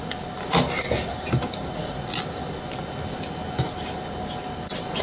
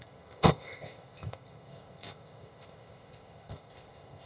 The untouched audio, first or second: first